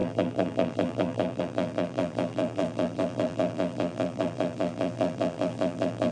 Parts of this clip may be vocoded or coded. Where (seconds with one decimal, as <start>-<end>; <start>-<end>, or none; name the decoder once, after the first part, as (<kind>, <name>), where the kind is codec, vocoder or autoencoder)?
0.0-6.1 (vocoder, BigVGAN v2)